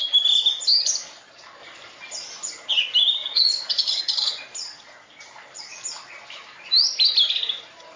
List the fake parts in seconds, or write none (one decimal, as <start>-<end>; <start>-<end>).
3.2-4.0